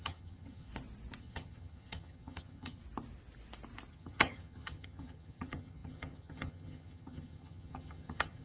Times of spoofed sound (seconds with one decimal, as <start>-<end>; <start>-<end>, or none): 0.0-0.7; 1.2-2.8; 3.9-8.4

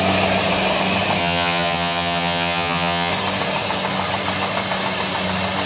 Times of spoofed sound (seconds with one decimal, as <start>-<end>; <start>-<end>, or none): 1.2-3.1

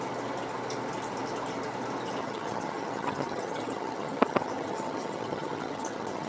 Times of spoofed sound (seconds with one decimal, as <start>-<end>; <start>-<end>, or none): 2.2-6.3

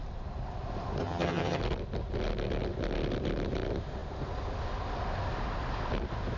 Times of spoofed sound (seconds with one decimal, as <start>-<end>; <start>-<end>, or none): 1.0-1.6

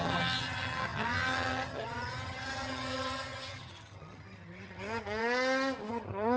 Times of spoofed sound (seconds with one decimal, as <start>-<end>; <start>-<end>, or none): 0.0-5.2; 5.9-6.4

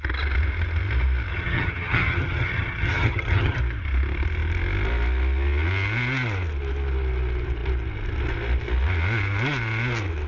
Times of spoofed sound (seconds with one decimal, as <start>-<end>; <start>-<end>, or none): 1.3-3.6